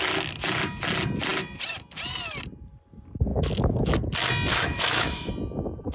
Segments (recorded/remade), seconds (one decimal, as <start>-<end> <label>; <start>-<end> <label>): 0.0-3.3 recorded; 3.3-3.9 remade; 3.9-4.5 recorded; 4.5-5.3 remade; 5.3-5.9 recorded

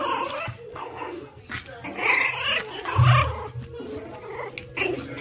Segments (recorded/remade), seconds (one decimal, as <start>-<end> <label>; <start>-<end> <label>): 0.0-0.7 recorded; 0.7-1.4 remade; 1.4-5.2 recorded

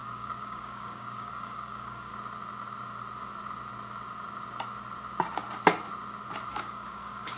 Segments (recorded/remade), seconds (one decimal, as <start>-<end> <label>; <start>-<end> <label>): 0.0-2.1 remade; 2.1-6.5 recorded; 6.5-7.4 remade

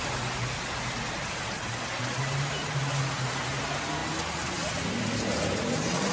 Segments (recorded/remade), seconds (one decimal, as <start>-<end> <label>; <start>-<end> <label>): 0.0-6.1 recorded

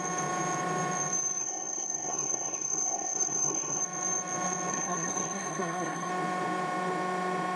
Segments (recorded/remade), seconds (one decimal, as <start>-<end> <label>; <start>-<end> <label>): 0.0-1.4 recorded; 1.4-3.8 remade; 3.8-4.7 recorded; 4.7-6.1 remade; 6.1-7.6 recorded

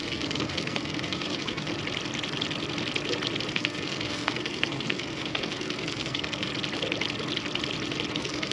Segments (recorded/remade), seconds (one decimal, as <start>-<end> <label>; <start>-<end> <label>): 0.0-1.7 remade; 1.7-3.5 recorded; 3.5-6.5 remade; 6.5-8.1 recorded; 8.1-8.5 remade

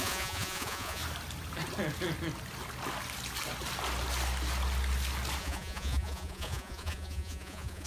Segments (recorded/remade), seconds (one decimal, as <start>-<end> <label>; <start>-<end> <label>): 0.0-1.0 remade; 1.0-5.4 recorded; 5.4-7.9 remade

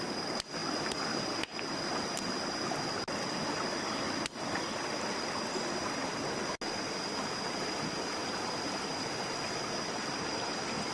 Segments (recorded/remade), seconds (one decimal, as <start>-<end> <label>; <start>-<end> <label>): 0.0-10.9 recorded